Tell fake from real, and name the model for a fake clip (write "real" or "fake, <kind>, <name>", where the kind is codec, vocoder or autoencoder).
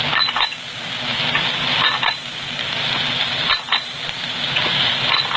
real